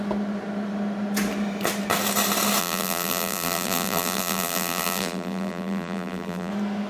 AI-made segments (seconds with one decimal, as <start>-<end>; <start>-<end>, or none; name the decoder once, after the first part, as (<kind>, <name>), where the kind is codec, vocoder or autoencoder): 2.6-6.5 (vocoder, BigVGAN v2)